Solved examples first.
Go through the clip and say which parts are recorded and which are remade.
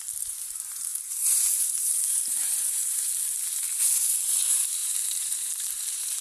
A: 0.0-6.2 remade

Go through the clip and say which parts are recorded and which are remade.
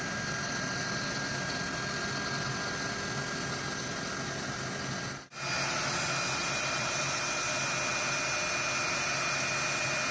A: 0.0-6.4 recorded; 6.4-7.0 remade; 7.0-10.1 recorded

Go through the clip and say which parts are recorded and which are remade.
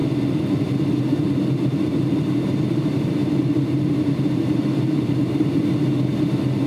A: 0.0-3.2 recorded; 3.2-5.7 remade; 5.7-6.7 recorded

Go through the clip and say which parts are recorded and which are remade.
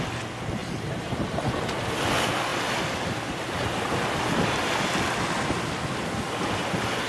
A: 0.0-0.6 recorded; 0.6-1.4 remade; 1.4-7.1 recorded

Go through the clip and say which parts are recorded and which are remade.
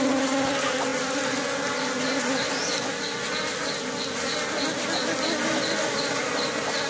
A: 0.0-6.9 recorded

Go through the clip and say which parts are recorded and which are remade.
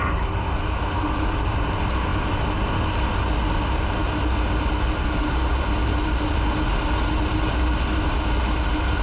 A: 0.0-9.0 recorded